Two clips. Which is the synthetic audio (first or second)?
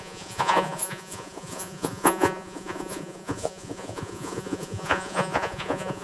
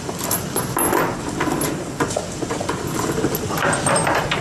first